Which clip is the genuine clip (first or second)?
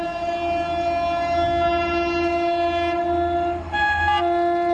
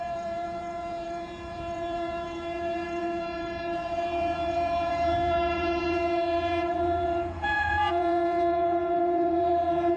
first